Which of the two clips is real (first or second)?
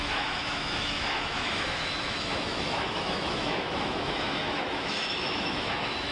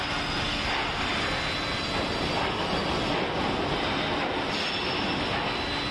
second